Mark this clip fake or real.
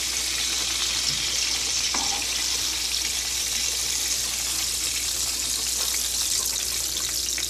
real